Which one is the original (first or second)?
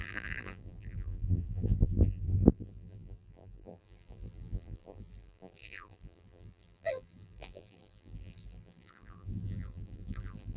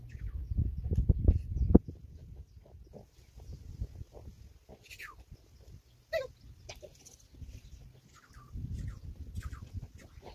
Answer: second